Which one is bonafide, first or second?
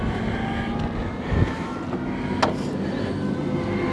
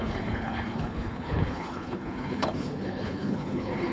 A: first